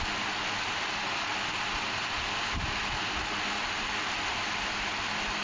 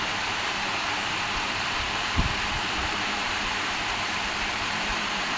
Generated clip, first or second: second